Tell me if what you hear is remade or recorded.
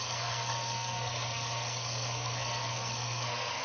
remade